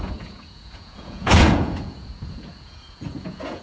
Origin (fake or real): fake